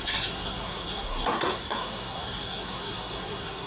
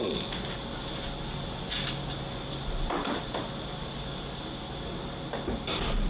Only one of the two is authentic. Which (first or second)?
second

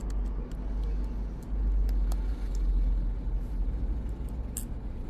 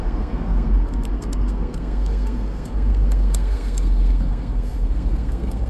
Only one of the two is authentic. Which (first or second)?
first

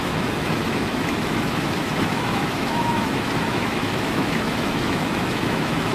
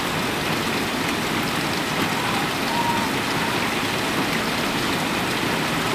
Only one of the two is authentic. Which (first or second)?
second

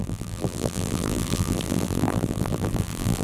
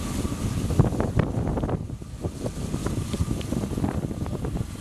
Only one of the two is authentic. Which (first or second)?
second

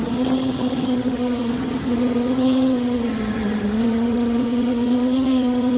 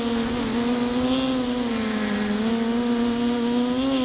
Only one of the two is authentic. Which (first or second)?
second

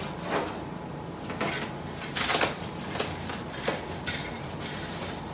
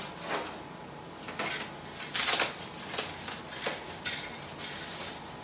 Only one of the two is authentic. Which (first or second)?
second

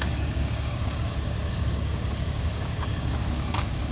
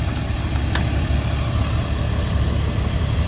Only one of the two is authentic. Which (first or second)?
second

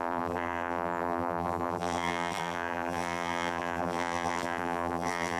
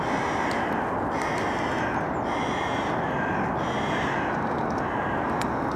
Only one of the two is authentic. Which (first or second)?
second